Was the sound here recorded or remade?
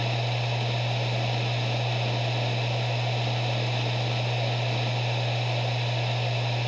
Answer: recorded